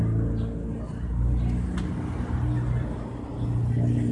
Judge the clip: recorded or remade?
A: recorded